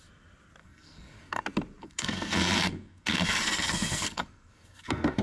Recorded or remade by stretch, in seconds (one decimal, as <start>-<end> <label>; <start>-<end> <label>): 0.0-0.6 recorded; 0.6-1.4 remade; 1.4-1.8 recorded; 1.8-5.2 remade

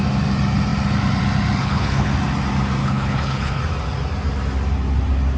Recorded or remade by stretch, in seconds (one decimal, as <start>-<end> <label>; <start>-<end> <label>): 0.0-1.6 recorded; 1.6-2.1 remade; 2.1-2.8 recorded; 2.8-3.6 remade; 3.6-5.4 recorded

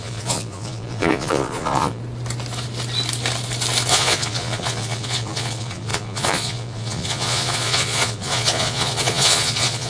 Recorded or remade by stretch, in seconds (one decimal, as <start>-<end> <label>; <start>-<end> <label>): 0.0-2.0 remade; 2.0-3.9 recorded; 3.9-9.9 remade

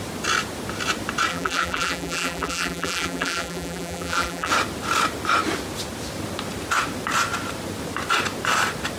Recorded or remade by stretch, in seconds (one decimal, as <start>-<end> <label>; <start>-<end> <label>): 0.0-1.3 recorded; 1.3-4.5 remade; 4.5-9.0 recorded

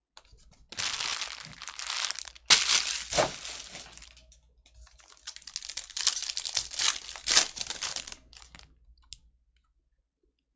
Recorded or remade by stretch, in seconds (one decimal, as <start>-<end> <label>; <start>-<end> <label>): 0.0-10.6 recorded